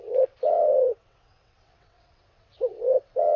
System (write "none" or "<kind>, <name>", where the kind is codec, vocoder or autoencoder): vocoder, WaveNeXt